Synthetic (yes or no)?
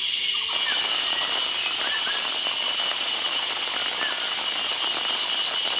no